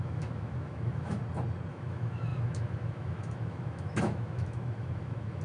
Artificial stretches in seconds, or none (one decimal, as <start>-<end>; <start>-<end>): 0.0-1.2; 1.7-5.4